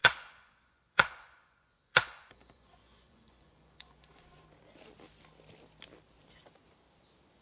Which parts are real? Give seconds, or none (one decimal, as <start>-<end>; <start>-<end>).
4.4-7.4